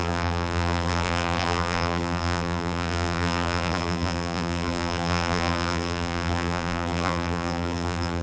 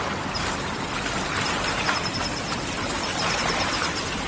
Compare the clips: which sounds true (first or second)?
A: second